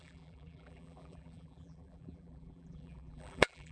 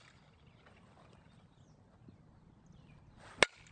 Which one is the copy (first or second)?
first